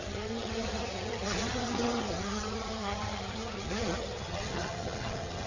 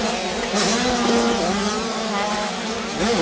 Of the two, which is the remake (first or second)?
first